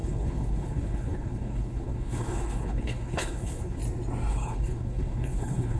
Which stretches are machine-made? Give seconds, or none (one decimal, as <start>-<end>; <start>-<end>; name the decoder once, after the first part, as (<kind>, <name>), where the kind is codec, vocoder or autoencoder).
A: 0.0-3.8 (codec, HILCodec); 4.3-5.8